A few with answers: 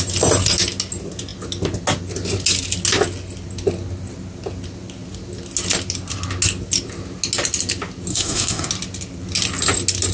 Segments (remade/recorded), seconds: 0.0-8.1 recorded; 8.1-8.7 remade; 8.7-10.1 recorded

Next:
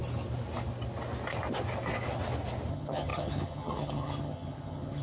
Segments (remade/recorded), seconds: 0.0-2.7 recorded; 2.7-5.0 remade

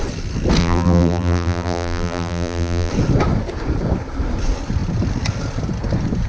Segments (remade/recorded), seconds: 0.0-0.6 recorded; 0.6-2.9 remade; 2.9-6.3 recorded

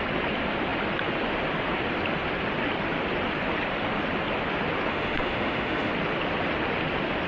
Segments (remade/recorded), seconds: 0.0-4.9 recorded; 4.9-5.9 remade; 5.9-7.3 recorded

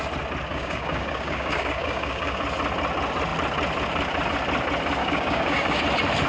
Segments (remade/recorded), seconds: 0.0-0.5 recorded; 0.5-2.4 remade; 2.4-5.0 recorded; 5.0-5.8 remade; 5.8-6.3 recorded

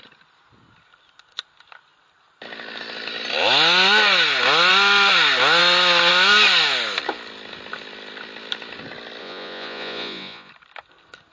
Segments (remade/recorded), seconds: 0.0-9.2 recorded; 9.2-10.5 remade; 10.5-11.3 recorded

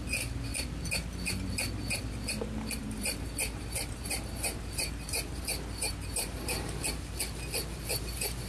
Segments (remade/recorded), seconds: 0.0-2.8 recorded; 2.8-6.8 remade; 6.8-8.5 recorded

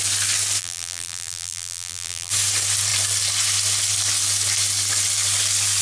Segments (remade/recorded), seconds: 0.0-0.6 recorded; 0.6-2.3 remade; 2.3-5.8 recorded